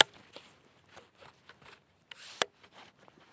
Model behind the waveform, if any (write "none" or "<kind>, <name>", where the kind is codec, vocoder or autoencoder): none